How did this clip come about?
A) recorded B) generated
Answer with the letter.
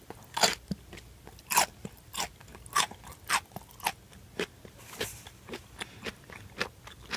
A